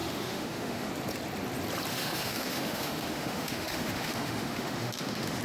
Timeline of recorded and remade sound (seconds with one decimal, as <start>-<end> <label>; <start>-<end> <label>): 0.0-0.9 remade; 0.9-1.9 recorded; 1.9-5.4 remade